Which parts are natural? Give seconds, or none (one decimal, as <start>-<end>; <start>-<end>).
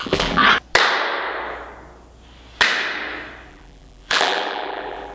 0.4-3.5